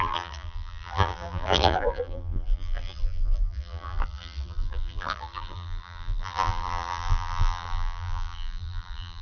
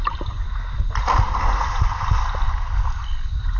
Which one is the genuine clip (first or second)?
second